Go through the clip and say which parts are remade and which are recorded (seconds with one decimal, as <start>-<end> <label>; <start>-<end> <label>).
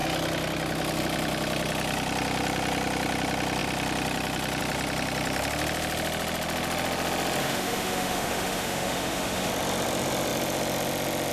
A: 0.0-7.4 recorded; 7.4-9.5 remade; 9.5-11.3 recorded